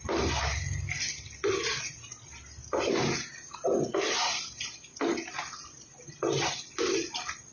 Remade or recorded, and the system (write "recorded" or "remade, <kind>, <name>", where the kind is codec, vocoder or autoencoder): recorded